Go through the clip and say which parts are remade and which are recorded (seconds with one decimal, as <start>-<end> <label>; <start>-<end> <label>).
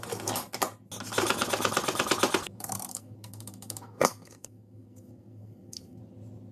0.0-2.4 recorded; 2.4-6.0 remade; 6.0-6.5 recorded